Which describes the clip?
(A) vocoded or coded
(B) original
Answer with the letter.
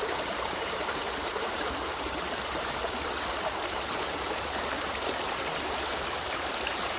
A